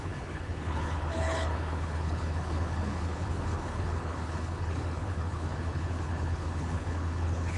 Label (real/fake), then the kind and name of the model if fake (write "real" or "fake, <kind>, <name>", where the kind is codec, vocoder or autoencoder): fake, codec, HILCodec